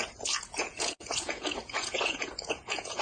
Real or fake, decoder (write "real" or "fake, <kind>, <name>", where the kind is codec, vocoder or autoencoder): fake, vocoder, Vocos